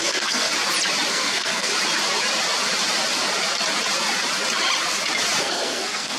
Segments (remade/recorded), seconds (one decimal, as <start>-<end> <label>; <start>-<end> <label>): 0.0-0.5 remade; 0.5-1.1 recorded; 1.1-1.7 remade; 1.7-5.4 recorded; 5.4-6.2 remade